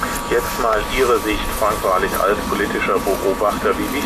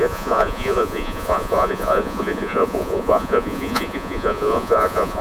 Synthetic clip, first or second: second